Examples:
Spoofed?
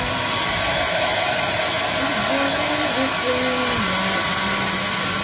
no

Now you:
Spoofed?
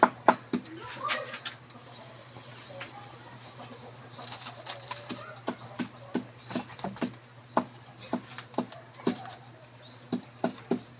no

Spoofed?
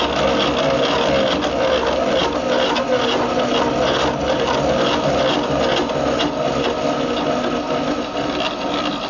no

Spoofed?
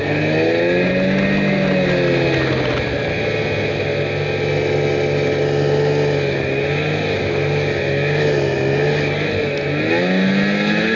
no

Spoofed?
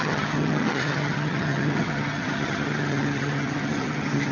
yes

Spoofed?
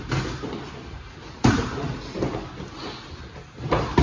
no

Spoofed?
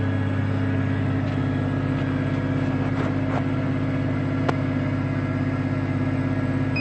no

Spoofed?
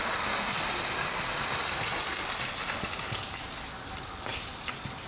no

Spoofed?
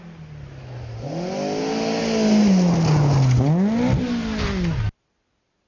no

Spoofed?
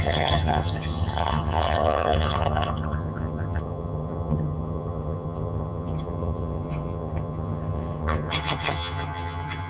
yes